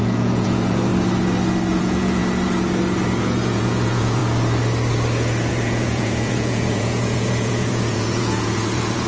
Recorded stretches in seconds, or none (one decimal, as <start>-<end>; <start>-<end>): 0.9-1.8; 2.2-3.2; 4.2-5.5